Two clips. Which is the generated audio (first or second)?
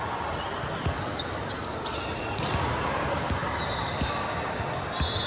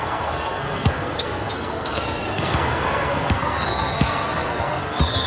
second